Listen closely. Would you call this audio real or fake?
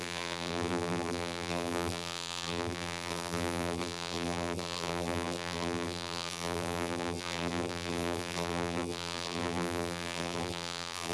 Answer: fake